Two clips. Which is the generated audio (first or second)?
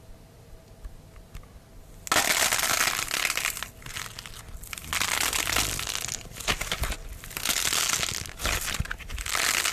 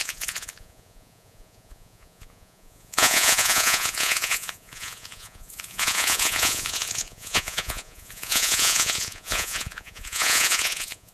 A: second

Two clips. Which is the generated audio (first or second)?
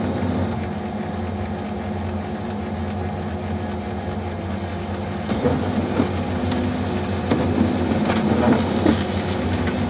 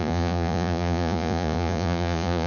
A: second